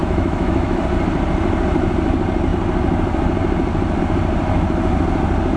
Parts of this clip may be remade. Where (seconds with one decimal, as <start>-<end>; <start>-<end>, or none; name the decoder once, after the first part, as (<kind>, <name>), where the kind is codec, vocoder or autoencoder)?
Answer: 0.0-0.8 (autoencoder, DAC-VAE)